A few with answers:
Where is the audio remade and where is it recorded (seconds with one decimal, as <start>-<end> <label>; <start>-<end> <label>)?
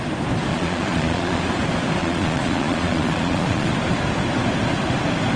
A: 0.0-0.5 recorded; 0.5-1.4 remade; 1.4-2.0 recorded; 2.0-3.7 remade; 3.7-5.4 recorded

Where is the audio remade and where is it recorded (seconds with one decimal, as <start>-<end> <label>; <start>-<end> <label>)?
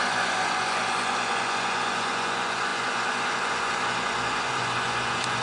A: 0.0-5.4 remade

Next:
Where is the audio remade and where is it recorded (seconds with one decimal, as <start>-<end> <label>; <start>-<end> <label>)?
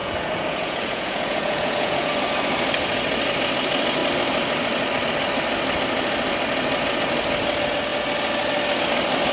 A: 0.0-2.1 remade; 2.1-9.3 recorded